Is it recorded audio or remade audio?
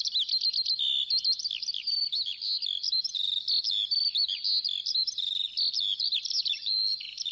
recorded